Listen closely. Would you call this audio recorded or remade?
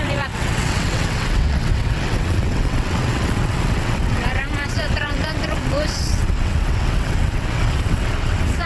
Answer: remade